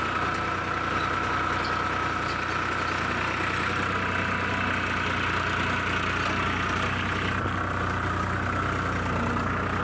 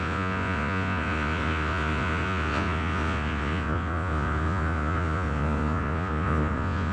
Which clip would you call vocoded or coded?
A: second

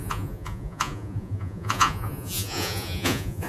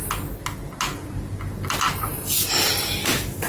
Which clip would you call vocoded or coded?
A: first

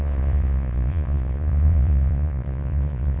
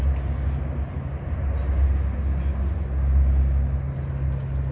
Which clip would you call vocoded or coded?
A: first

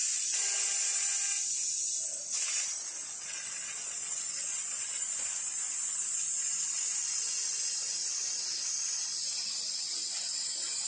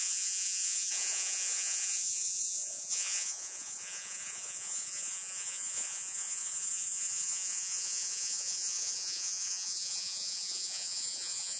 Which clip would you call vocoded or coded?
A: second